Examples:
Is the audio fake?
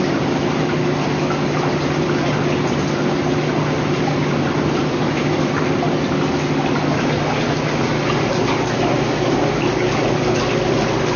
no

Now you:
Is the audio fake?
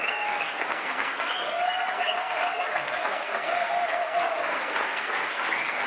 yes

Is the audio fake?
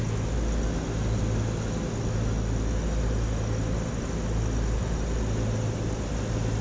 no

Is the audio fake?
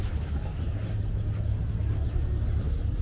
no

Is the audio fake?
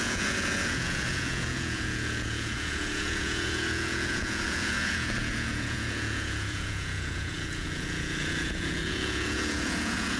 yes